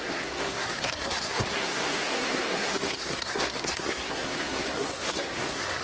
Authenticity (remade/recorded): remade